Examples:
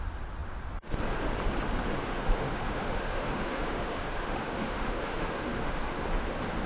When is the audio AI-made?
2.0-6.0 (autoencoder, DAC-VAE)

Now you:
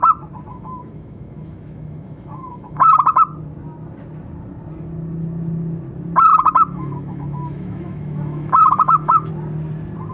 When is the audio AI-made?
0.5-3.2 (autoencoder, DAC-VAE); 6.3-9.3

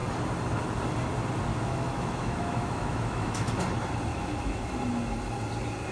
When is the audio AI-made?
1.5-3.5 (autoencoder, DAC-VAE); 4.1-4.7

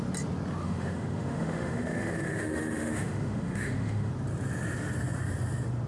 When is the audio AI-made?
0.6-4.1 (autoencoder, DAC-VAE)

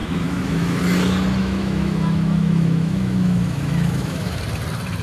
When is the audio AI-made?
0.0-0.8 (autoencoder, DAC-VAE); 1.4-4.4

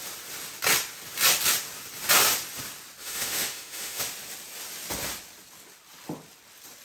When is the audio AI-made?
3.0-4.0 (autoencoder, DAC-VAE)

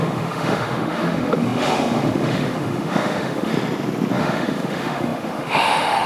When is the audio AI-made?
0.0-3.5 (autoencoder, DAC-VAE); 4.2-6.1